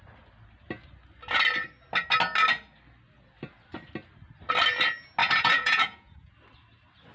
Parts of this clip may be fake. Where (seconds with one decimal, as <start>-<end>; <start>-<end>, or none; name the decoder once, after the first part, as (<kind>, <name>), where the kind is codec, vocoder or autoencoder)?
5.2-6.3 (vocoder, Vocos)